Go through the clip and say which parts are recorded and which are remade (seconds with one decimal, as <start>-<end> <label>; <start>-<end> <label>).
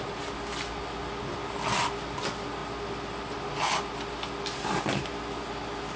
0.0-6.0 recorded